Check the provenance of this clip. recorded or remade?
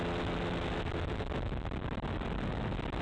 recorded